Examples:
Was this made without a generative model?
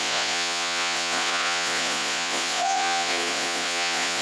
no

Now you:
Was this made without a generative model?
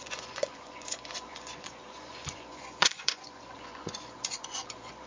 no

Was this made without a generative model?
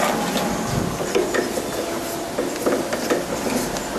yes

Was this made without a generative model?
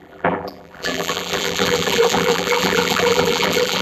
no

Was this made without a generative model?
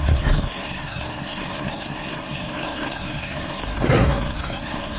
no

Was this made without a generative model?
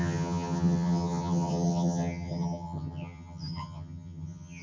no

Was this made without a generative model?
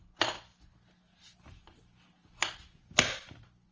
yes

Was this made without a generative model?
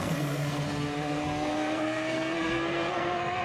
no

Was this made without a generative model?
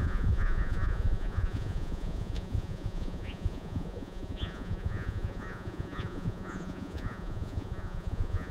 no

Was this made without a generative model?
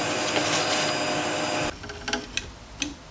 yes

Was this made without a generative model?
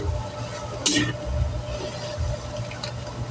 yes